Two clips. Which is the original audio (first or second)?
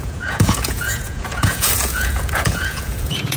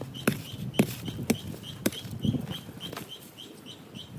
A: second